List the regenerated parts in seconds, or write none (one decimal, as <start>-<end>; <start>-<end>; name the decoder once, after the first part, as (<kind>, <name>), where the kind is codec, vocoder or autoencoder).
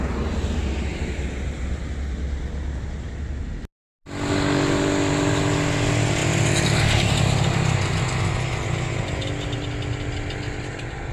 0.9-1.8 (vocoder, BigVGAN v2); 6.2-6.8